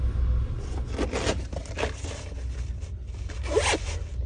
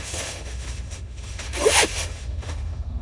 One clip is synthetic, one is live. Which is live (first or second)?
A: first